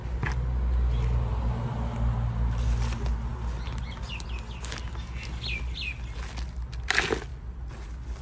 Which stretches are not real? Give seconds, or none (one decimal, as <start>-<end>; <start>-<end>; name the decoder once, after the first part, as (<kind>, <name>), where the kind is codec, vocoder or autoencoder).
none